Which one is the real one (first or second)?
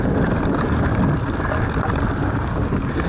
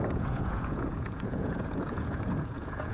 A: first